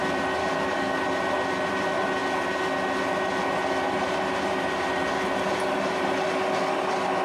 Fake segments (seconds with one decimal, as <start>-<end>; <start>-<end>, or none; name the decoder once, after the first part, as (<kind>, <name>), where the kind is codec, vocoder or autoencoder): 0.4-1.0 (codec, DAC)